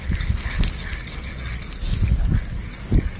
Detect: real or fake real